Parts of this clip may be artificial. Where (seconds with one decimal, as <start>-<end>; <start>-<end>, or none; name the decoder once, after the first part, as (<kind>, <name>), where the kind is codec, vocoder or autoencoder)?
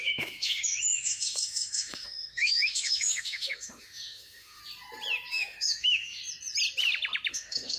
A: 0.0-4.6 (autoencoder, DAC-VAE); 5.3-6.2; 7.3-7.8